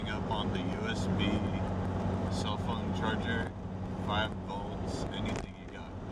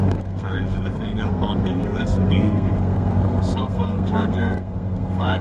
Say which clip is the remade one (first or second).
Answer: second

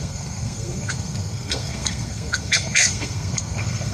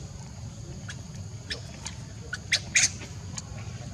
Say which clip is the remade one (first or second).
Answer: first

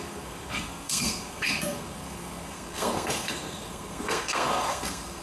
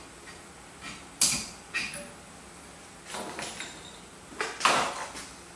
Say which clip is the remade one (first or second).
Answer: first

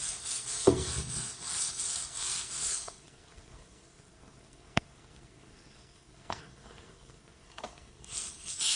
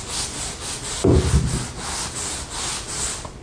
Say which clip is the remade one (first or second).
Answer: first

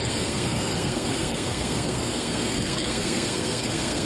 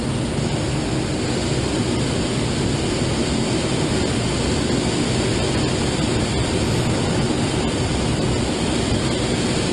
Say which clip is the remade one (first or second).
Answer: first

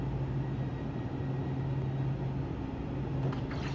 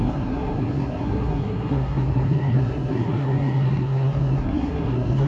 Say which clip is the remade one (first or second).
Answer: second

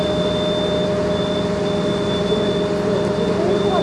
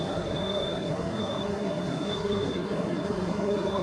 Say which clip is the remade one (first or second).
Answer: second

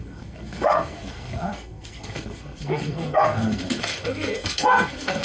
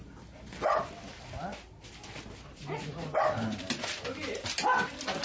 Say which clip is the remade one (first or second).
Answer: first